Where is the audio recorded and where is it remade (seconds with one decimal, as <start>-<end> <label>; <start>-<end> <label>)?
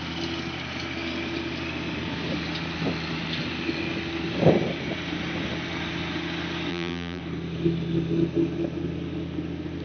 0.0-6.7 recorded; 6.7-7.2 remade; 7.2-9.8 recorded